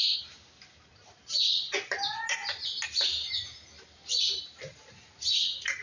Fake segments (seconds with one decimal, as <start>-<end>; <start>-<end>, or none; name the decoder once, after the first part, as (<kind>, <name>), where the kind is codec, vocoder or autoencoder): none